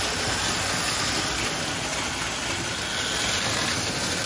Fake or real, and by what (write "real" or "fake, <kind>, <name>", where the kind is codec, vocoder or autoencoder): real